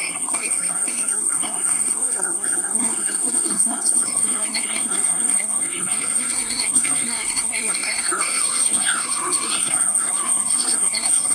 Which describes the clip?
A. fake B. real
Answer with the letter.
A